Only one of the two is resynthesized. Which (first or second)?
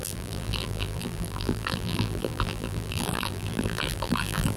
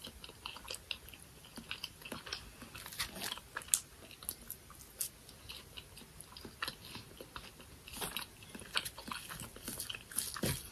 first